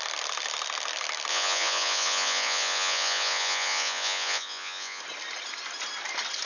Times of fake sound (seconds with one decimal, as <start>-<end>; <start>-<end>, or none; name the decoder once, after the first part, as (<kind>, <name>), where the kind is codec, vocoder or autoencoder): 1.3-5.0 (vocoder, Vocos)